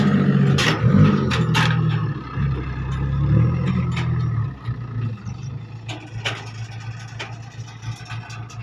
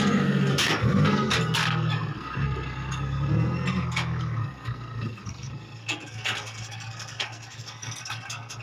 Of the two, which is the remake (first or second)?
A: second